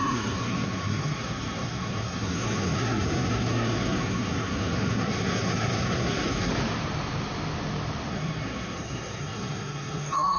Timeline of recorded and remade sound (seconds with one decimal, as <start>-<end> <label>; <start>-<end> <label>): 0.0-6.5 remade; 6.5-8.1 recorded; 8.1-10.4 remade